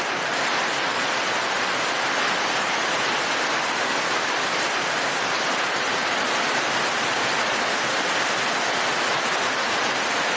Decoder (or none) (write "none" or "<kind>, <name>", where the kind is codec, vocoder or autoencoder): none